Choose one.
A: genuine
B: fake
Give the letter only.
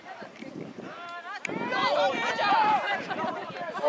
B